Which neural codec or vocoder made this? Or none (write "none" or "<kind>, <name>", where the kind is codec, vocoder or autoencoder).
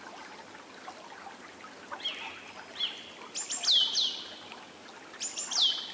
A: none